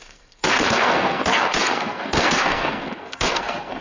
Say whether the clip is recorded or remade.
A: remade